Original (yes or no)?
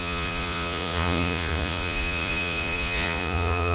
no